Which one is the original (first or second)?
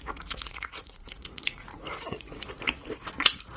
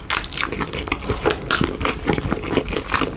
second